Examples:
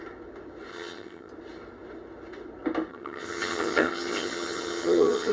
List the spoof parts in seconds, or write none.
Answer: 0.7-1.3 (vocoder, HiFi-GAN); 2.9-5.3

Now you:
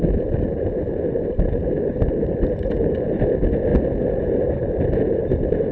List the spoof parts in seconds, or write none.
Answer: none

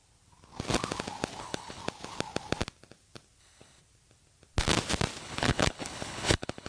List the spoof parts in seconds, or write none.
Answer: 1.4-1.8 (codec, HILCodec); 3.4-3.8; 5.2-6.7